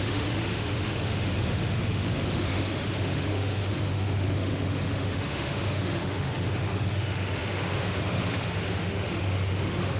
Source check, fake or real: fake